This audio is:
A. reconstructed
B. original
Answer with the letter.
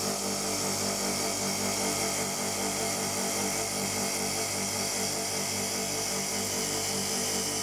B